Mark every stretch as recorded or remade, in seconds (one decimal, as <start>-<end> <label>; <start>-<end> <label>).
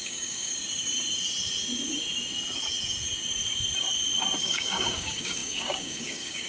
0.0-0.5 remade; 0.5-4.4 recorded; 4.4-6.5 remade